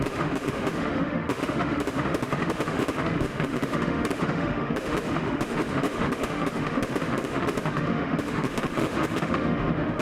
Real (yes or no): no